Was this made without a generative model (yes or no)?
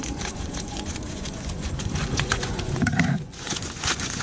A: no